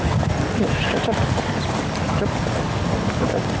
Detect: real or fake real